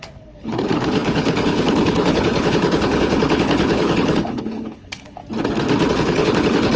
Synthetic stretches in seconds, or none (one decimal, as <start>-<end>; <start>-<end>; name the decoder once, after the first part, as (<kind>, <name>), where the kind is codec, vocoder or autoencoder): 0.0-5.2 (codec, HILCodec); 5.9-6.8